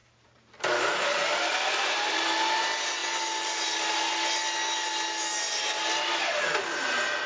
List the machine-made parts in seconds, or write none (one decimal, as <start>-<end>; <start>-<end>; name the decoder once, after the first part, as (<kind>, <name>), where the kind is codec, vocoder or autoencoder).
0.0-0.7 (vocoder, BigVGAN v2); 1.3-2.6